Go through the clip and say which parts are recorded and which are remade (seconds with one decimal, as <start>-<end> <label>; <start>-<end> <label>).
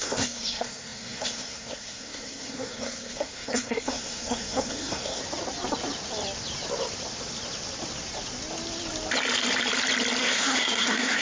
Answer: 0.0-5.2 remade; 5.2-10.2 recorded; 10.2-11.2 remade